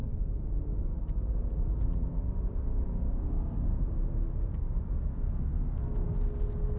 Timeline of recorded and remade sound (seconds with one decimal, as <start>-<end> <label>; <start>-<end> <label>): 0.0-3.3 remade; 3.3-6.8 recorded